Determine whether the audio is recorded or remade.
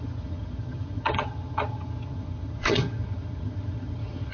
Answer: remade